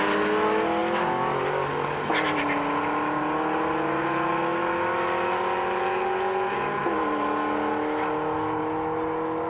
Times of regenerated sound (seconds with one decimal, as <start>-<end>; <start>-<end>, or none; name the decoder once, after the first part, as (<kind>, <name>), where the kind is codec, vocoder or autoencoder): none